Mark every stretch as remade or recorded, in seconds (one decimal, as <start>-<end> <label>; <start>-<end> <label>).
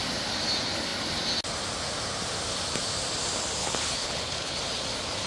0.0-3.6 recorded; 3.6-4.6 remade; 4.6-5.3 recorded